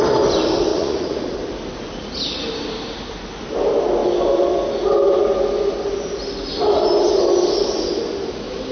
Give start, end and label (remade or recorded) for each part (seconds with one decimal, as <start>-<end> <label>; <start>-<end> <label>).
0.0-0.7 recorded; 0.7-1.4 remade; 1.4-8.7 recorded